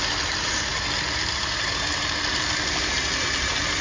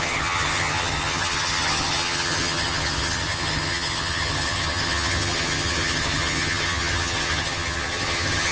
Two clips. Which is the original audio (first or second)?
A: first